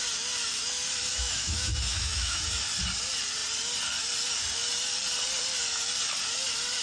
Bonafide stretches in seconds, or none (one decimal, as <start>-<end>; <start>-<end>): 0.0-1.1; 2.4-6.8